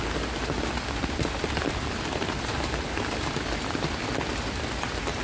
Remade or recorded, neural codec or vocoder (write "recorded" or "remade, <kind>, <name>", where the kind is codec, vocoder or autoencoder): recorded